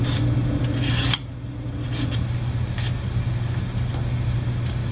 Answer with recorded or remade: recorded